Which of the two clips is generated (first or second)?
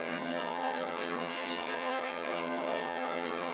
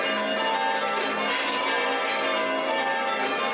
first